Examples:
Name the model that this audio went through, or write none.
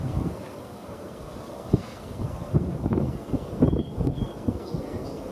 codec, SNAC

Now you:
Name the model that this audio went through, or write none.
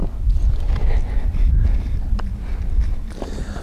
none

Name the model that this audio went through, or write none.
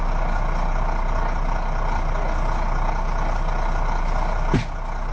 none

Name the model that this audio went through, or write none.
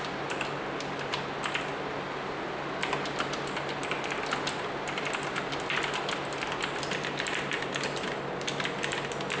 none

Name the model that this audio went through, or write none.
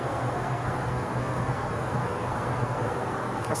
codec, SNAC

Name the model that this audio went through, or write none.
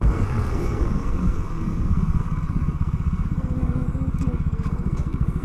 codec, SNAC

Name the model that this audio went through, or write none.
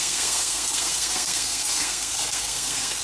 codec, SNAC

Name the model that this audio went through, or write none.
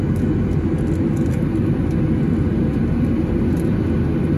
none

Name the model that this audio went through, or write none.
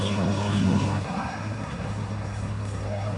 codec, SNAC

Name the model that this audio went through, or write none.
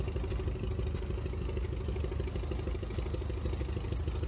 none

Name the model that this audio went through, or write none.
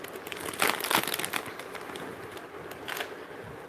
none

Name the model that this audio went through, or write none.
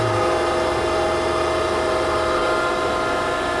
none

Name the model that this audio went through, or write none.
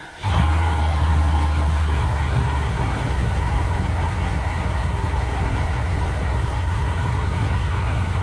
codec, SNAC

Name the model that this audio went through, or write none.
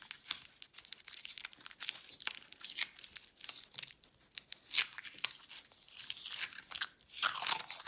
none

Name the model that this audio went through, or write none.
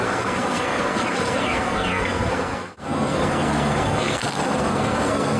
codec, SNAC